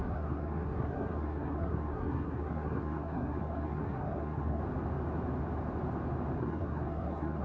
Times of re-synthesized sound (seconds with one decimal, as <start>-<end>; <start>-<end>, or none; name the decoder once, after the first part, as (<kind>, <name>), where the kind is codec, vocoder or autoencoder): 0.0-4.6 (codec, SNAC); 6.4-7.4

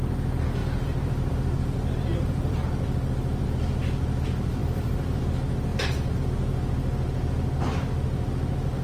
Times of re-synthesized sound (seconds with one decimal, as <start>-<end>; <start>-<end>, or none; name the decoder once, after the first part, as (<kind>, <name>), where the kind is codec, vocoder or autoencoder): 0.6-1.3 (vocoder, BigVGAN v2); 2.1-2.6; 4.6-5.2; 5.7-6.2

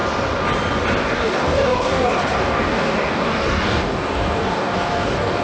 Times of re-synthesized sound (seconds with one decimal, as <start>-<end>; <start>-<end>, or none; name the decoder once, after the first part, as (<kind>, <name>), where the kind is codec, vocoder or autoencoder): 1.0-5.4 (codec, DAC)

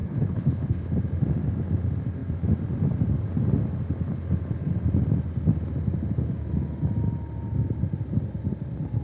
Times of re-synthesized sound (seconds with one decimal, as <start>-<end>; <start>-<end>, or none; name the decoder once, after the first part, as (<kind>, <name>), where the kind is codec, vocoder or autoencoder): 0.0-0.9 (codec, HILCodec)

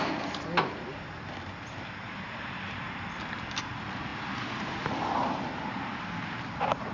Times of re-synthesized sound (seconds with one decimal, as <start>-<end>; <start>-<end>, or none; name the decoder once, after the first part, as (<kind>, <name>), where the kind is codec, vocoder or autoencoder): none